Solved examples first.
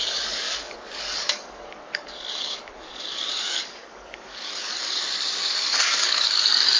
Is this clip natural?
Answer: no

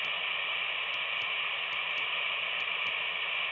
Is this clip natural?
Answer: yes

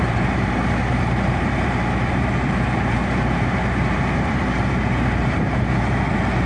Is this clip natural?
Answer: no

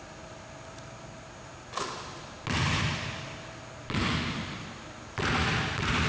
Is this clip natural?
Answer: yes